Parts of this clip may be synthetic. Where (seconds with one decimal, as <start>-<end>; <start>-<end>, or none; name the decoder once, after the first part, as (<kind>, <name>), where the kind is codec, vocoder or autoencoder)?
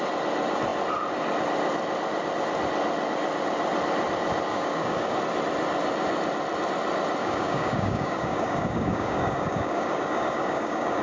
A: 4.5-5.2 (codec, DAC); 7.2-11.0